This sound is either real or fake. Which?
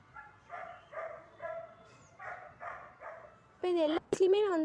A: fake